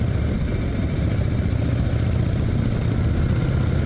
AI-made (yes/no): no